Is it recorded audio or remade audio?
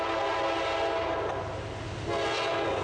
recorded